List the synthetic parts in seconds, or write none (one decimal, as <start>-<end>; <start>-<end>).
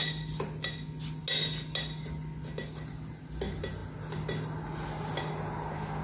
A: none